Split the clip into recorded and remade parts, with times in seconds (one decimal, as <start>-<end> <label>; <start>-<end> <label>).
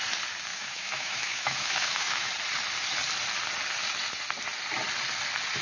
0.0-0.5 recorded; 0.5-2.3 remade; 2.3-5.6 recorded